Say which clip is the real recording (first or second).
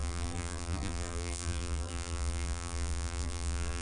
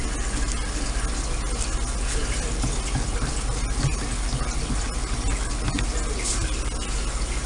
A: second